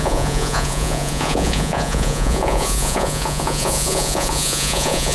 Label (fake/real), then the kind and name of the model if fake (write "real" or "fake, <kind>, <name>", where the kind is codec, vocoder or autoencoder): fake, vocoder, Vocos